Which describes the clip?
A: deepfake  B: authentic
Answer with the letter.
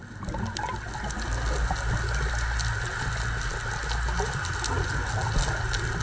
B